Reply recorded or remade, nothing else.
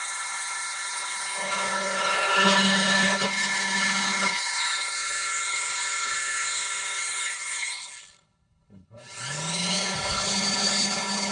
remade